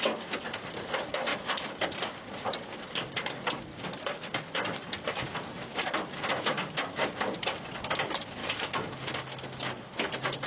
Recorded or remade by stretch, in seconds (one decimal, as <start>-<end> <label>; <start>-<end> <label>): 0.0-10.5 recorded